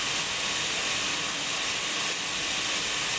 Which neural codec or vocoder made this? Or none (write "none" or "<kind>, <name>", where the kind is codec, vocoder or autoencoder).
none